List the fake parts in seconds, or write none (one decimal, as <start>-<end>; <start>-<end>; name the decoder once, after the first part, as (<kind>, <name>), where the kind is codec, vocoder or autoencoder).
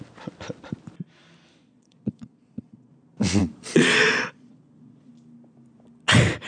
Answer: 1.6-2.9 (vocoder, Vocos); 3.4-5.1